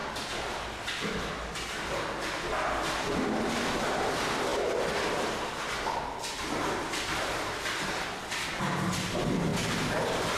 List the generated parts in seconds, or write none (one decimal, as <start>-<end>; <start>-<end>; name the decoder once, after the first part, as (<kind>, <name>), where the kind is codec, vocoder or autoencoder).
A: none